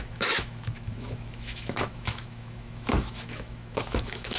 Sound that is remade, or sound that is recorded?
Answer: remade